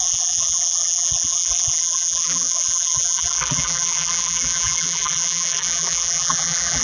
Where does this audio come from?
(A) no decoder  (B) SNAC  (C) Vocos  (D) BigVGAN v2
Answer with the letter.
D